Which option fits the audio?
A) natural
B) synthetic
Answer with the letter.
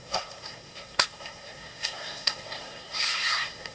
B